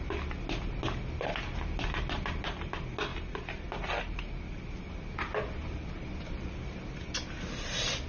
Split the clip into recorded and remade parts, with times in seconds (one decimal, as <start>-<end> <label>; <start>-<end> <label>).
0.0-8.1 recorded